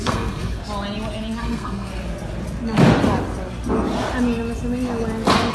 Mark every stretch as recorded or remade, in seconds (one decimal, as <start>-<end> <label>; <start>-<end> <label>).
0.0-0.6 remade; 0.6-1.4 recorded; 1.4-1.9 remade; 1.9-5.5 recorded